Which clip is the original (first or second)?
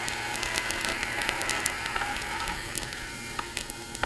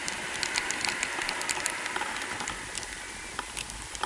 second